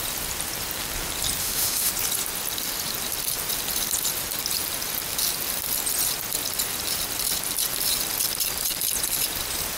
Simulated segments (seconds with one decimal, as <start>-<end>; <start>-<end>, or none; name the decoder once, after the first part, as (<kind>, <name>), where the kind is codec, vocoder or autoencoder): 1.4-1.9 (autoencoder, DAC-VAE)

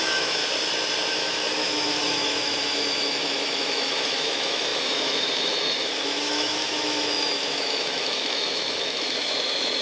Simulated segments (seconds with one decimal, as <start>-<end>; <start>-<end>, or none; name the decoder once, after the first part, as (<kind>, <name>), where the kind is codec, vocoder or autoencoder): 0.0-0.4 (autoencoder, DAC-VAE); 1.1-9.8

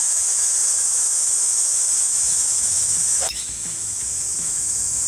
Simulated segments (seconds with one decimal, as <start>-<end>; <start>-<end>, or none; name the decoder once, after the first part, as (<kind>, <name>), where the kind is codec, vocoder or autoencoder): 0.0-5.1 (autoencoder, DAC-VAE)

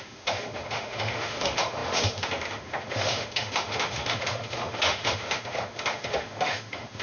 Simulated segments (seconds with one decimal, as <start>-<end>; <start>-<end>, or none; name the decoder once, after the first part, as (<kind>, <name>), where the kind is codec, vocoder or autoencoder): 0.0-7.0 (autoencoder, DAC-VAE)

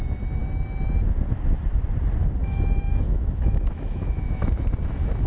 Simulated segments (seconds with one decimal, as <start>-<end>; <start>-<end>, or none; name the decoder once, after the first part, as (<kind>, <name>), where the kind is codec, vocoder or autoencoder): 2.4-4.7 (autoencoder, DAC-VAE)

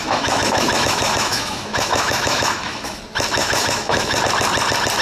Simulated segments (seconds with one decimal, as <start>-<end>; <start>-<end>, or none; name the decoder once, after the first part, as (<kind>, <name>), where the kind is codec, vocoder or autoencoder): 0.0-3.0 (autoencoder, DAC-VAE); 3.4-4.2

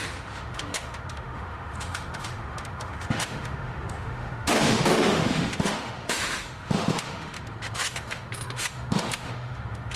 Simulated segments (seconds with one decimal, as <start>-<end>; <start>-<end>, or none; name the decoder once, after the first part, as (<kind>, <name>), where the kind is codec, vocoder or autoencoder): 0.0-10.0 (autoencoder, DAC-VAE)